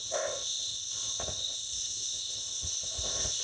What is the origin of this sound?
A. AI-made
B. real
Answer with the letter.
A